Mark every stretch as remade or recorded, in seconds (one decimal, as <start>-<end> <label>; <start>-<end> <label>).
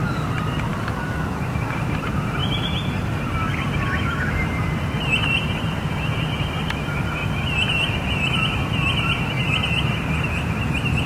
0.0-2.4 remade; 2.4-4.4 recorded; 4.4-7.2 remade; 7.2-8.4 recorded; 8.4-11.1 remade